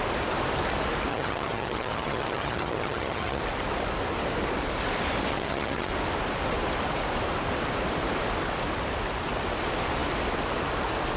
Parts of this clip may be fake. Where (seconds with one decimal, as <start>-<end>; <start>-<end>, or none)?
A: 1.1-3.4; 5.3-5.9